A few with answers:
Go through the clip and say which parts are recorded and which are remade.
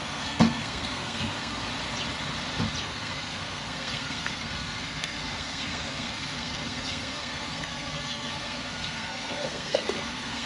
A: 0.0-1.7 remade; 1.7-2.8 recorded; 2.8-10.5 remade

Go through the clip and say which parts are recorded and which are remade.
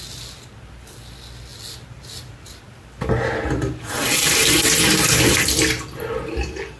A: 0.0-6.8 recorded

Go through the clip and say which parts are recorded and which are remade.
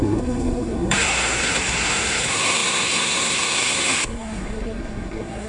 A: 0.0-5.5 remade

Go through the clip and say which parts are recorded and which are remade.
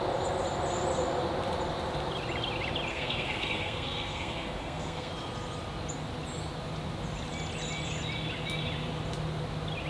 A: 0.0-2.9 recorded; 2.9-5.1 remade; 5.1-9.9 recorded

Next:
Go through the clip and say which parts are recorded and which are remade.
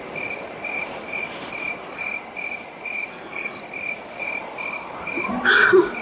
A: 0.0-3.1 recorded; 3.1-3.6 remade; 3.6-6.0 recorded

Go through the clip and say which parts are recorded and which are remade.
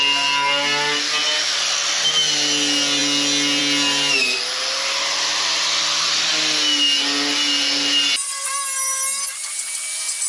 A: 0.0-10.3 recorded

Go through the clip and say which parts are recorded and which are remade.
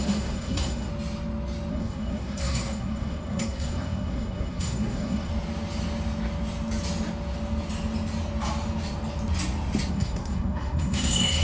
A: 0.0-0.9 remade; 0.9-1.7 recorded; 1.7-5.3 remade; 5.3-9.9 recorded; 9.9-11.4 remade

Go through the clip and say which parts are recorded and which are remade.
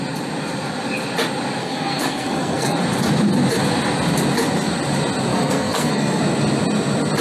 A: 0.0-1.6 recorded; 1.6-2.8 remade; 2.8-5.3 recorded; 5.3-6.2 remade; 6.2-7.2 recorded